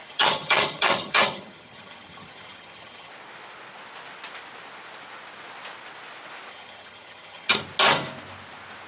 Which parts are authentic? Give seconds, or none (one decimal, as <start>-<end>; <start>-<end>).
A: 3.1-6.5; 7.6-8.9